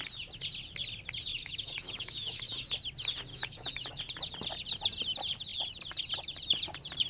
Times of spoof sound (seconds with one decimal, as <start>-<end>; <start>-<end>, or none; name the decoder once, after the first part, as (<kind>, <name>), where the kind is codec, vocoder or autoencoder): 1.3-2.7 (autoencoder, DAC-VAE); 3.3-4.0